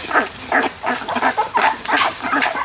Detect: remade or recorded recorded